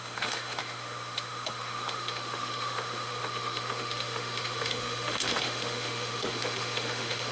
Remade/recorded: remade